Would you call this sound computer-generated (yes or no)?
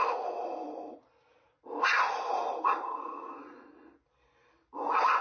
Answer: no